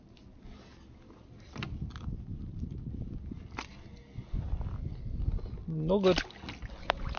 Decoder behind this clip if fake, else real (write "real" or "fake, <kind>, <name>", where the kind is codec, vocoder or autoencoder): real